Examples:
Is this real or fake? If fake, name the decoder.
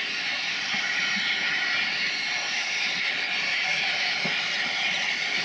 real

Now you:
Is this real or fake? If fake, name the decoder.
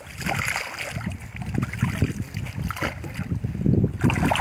real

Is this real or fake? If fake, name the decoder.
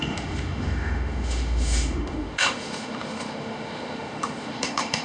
fake, autoencoder, DAC-VAE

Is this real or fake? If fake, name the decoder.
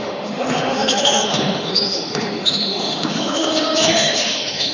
fake, autoencoder, DAC-VAE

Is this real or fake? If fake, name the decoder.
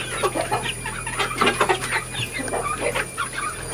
real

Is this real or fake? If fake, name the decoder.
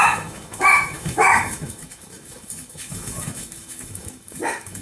fake, autoencoder, DAC-VAE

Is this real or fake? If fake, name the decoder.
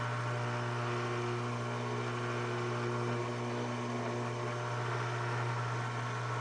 real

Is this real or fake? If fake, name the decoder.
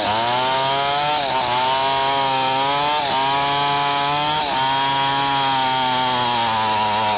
real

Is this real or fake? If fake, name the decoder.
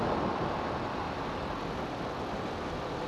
real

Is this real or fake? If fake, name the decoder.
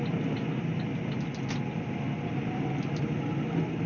real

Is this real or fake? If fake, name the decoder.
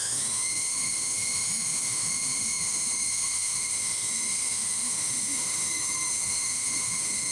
fake, autoencoder, DAC-VAE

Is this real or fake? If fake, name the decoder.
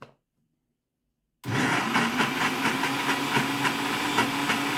real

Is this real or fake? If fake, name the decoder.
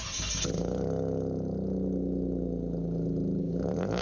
real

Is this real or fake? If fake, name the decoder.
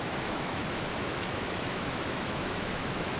fake, autoencoder, DAC-VAE